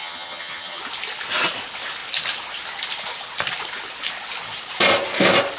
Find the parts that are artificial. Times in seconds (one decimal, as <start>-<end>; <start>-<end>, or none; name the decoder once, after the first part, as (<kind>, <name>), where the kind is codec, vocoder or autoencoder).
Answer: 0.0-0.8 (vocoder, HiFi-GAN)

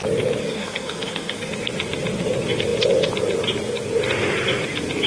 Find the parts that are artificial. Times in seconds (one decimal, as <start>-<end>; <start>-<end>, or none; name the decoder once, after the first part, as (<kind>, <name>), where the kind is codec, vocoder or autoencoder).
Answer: 0.4-1.5 (codec, SNAC)

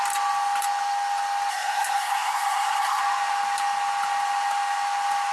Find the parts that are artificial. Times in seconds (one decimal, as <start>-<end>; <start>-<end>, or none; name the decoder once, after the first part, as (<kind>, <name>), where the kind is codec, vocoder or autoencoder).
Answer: 1.5-3.0 (codec, SNAC)

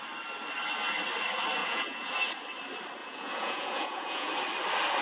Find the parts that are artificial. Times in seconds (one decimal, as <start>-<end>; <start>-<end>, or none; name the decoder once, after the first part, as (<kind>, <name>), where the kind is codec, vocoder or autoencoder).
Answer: 1.6-2.1 (vocoder, Vocos); 3.0-4.3

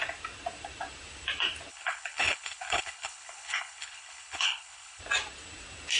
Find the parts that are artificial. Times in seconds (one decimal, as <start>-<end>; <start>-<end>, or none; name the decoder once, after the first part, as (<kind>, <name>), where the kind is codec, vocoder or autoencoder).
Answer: 1.7-5.0 (codec, HILCodec)

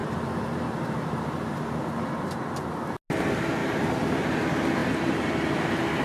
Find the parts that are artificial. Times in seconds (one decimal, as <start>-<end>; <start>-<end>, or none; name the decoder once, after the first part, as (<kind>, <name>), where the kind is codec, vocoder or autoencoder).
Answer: 0.0-1.8 (vocoder, BigVGAN v2); 3.6-4.2; 4.8-5.3